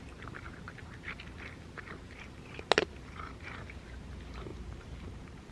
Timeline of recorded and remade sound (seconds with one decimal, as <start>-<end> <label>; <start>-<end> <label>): 0.0-4.5 recorded; 4.5-5.5 remade